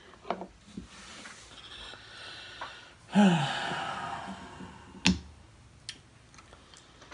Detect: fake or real real